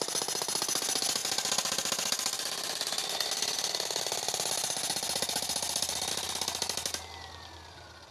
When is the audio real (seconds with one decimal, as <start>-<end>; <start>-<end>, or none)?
0.0-8.1